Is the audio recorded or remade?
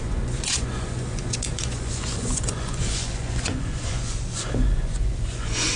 remade